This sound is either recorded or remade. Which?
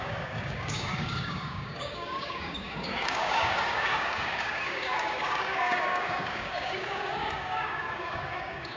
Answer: remade